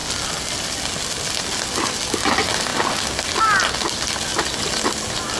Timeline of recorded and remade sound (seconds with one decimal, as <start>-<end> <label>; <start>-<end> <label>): 0.0-5.4 recorded